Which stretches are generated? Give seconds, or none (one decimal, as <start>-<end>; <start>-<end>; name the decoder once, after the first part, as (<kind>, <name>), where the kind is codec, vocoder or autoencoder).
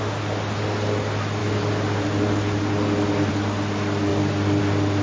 none